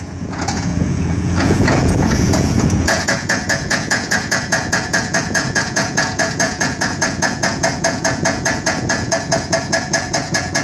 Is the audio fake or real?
fake